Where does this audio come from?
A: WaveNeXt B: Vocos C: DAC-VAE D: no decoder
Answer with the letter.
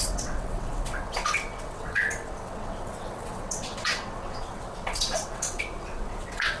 A